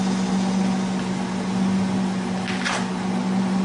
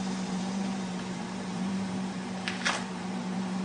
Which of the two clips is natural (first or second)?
first